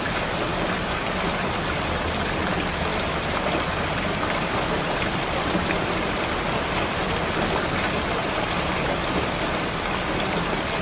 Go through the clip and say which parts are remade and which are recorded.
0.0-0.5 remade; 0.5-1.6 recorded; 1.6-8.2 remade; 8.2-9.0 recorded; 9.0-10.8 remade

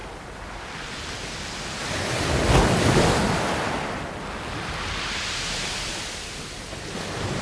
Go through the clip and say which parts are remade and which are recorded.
0.0-7.4 recorded

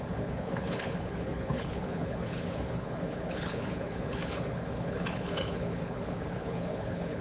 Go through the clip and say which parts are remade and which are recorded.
0.0-7.2 remade